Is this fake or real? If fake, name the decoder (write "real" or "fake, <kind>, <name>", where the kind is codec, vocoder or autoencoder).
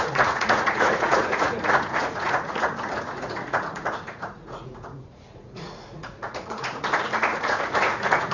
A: fake, vocoder, Vocos